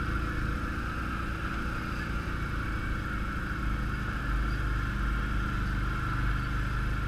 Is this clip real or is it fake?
real